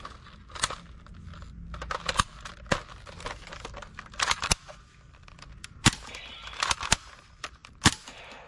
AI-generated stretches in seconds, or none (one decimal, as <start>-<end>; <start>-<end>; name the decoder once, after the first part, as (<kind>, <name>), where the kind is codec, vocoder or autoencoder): none